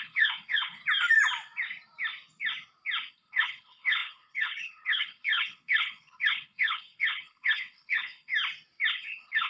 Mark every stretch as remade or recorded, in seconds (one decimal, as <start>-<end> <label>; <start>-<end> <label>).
0.0-0.8 remade; 0.8-3.1 recorded; 3.1-8.3 remade; 8.3-8.9 recorded; 8.9-9.5 remade